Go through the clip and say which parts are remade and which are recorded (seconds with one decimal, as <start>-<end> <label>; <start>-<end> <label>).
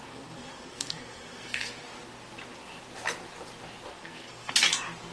0.0-1.7 remade; 1.7-3.9 recorded; 3.9-4.5 remade; 4.5-5.1 recorded